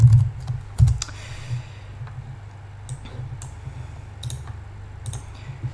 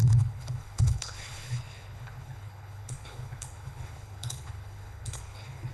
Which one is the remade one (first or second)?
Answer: second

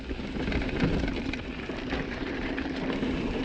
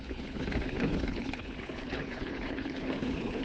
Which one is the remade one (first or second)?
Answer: second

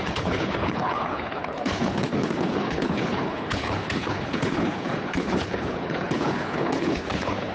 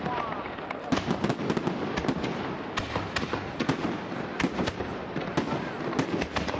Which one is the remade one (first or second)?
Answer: first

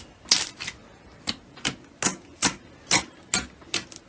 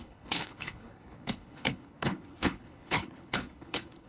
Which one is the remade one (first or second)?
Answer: second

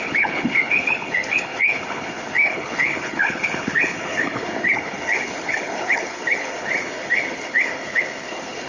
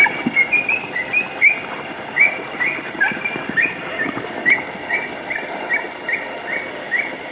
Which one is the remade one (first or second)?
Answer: first